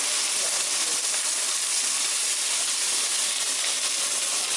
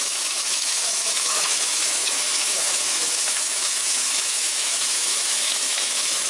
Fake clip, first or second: second